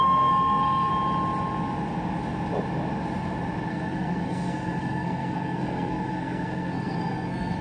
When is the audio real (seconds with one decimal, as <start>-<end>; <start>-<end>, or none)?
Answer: 0.9-3.7